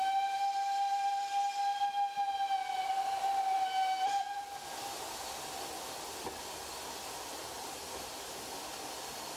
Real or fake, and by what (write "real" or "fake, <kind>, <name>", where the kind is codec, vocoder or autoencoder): real